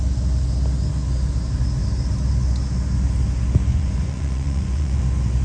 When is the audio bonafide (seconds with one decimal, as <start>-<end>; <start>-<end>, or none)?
0.0-3.7; 5.0-5.4